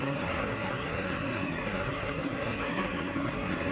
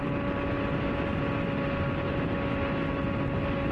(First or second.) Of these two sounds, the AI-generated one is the first